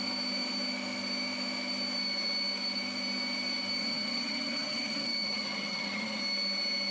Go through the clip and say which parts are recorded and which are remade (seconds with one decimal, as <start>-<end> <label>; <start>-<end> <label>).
0.0-3.8 recorded; 3.8-6.2 remade; 6.2-6.9 recorded